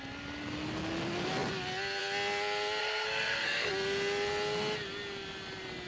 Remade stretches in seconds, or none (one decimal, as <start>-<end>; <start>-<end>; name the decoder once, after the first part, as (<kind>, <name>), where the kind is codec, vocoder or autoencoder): 2.8-3.7 (codec, SNAC)